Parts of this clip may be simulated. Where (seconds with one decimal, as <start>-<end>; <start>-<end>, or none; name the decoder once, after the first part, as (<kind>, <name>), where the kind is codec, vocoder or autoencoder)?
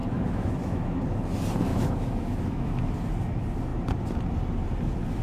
0.0-1.0 (autoencoder, DAC-VAE); 1.7-2.8